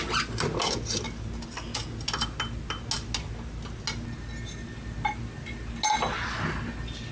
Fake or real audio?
real